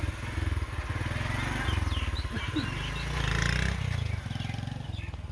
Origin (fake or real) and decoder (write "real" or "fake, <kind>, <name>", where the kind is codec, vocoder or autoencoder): real